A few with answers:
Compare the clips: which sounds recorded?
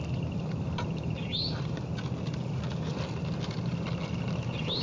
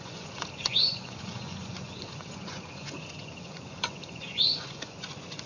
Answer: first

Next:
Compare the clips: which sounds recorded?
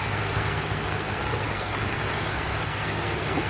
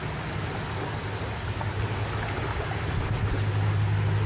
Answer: second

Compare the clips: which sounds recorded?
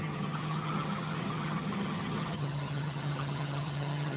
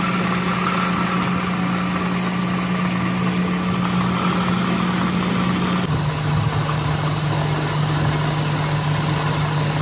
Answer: second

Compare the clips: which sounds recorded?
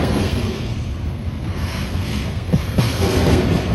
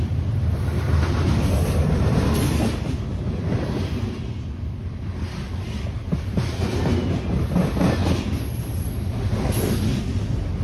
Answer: second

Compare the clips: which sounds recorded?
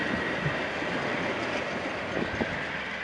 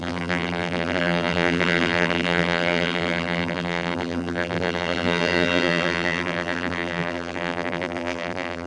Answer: first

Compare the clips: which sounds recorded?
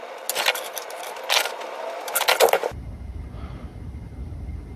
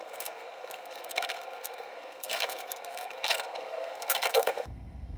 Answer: first